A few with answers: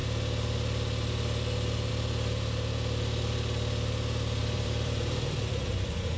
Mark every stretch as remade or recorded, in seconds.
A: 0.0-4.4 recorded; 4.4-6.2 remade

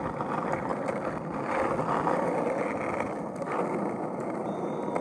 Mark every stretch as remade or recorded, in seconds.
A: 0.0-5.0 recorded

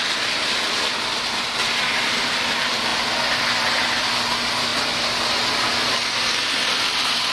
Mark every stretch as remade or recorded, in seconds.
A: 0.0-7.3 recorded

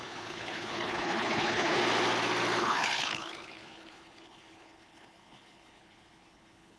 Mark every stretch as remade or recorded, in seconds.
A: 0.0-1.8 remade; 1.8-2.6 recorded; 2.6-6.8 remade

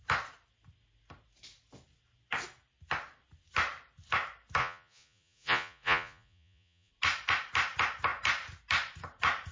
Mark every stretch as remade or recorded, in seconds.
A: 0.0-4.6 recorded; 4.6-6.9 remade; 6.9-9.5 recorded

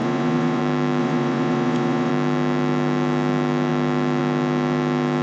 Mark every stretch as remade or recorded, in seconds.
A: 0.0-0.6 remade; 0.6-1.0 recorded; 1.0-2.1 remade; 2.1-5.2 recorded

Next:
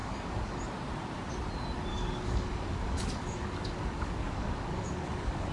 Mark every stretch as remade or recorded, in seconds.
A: 0.0-0.6 remade; 0.6-1.9 recorded; 1.9-5.5 remade